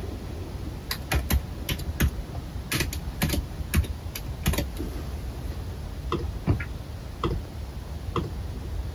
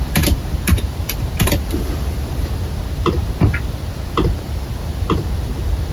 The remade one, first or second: second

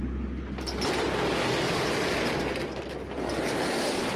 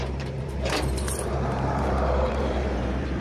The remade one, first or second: second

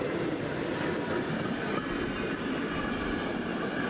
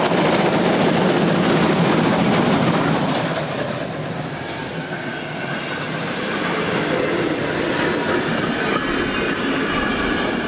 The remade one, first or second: first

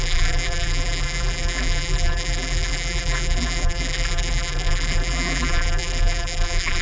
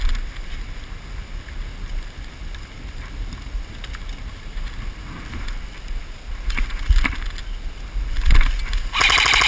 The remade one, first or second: first